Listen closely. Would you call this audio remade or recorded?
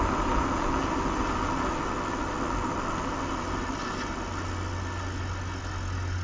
recorded